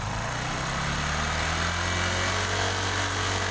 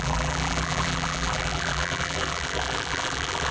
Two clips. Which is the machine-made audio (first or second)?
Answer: second